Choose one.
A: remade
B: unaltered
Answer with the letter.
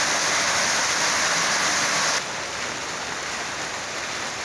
B